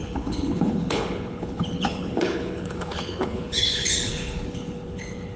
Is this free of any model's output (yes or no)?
no